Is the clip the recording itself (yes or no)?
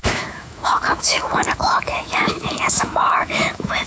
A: no